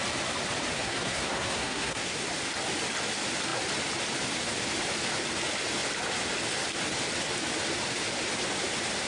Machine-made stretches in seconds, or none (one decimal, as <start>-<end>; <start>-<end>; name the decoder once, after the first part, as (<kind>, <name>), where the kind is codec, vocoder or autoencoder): 0.7-2.3 (codec, SNAC)